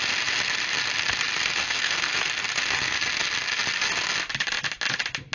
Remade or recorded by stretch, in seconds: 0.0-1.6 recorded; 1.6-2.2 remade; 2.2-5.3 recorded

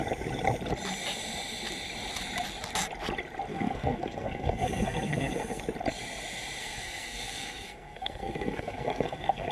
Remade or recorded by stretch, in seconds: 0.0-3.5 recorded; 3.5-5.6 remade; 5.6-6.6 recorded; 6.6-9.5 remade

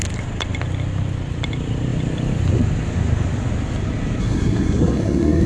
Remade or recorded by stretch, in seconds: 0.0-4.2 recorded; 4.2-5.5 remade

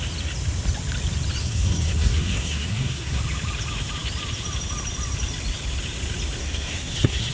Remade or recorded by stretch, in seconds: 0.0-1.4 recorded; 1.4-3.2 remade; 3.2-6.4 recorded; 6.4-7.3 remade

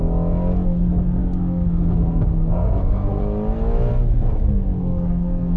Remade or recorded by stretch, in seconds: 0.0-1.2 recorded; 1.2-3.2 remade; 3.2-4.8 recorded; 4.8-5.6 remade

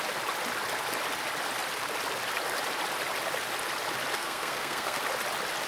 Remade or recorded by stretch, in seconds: 0.0-4.1 recorded; 4.1-5.0 remade; 5.0-5.7 recorded

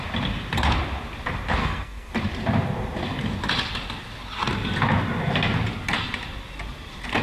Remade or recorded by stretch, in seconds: 0.0-1.6 recorded; 1.6-2.1 remade; 2.1-7.2 recorded

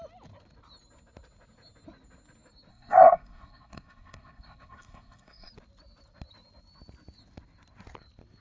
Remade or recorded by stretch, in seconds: 0.0-2.7 recorded; 2.7-5.5 remade; 5.5-8.4 recorded